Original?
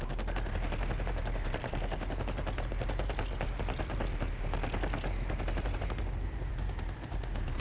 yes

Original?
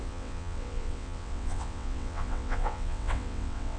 no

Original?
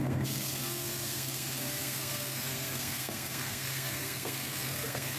no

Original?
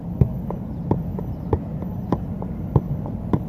no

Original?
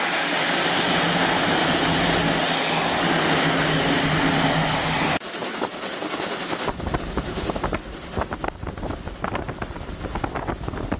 yes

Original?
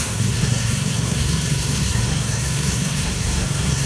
no